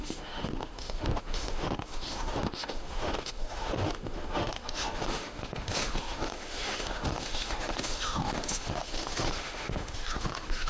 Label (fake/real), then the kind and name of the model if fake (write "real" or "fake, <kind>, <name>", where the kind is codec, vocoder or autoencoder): fake, autoencoder, DAC-VAE